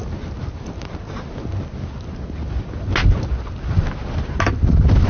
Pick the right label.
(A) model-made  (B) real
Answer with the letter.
B